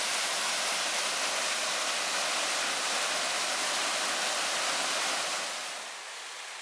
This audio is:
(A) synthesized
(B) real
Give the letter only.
B